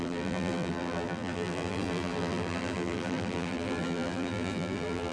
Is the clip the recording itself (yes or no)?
no